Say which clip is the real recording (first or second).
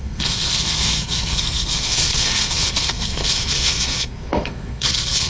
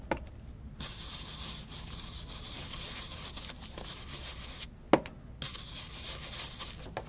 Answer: second